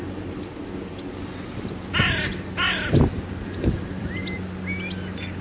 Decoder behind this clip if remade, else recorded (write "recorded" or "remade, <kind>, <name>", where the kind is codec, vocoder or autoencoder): recorded